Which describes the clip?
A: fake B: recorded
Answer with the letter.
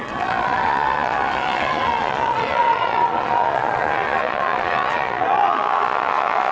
A